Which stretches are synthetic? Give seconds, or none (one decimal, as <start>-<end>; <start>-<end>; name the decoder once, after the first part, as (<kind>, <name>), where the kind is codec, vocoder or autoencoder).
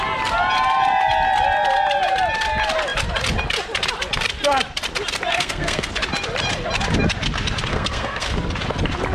5.3-5.9 (codec, SNAC); 7.7-8.3